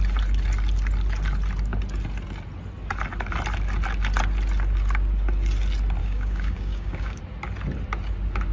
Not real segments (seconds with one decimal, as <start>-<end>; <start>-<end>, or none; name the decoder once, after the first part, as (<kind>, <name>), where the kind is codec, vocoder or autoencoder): 6.0-7.2 (codec, DAC)